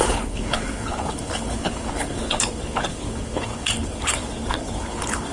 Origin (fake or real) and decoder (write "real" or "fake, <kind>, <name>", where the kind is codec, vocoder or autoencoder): fake, codec, HILCodec